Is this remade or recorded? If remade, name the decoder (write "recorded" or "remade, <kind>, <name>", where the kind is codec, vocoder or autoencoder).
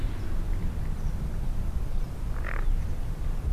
recorded